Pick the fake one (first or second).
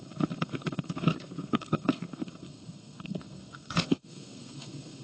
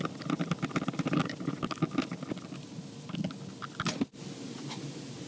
first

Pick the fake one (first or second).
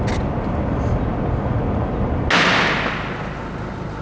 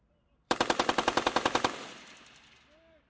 second